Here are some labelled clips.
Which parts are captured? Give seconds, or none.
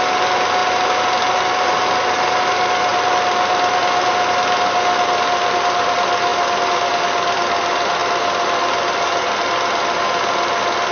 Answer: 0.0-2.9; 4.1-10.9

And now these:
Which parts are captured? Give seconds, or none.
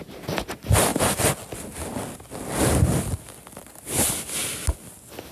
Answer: 0.0-5.3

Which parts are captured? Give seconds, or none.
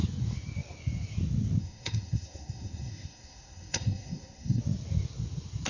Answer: 0.0-1.6; 4.6-5.7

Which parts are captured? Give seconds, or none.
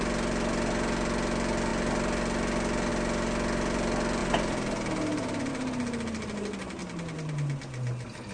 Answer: 0.0-8.3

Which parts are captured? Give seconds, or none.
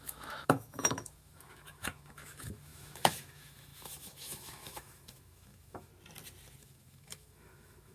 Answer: 5.9-6.6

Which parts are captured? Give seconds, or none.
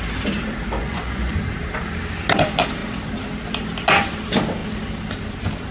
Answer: 0.0-0.8; 1.3-5.7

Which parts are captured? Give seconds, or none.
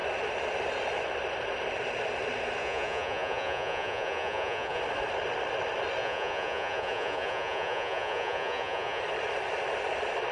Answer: 0.0-2.6; 4.8-6.0; 9.0-10.3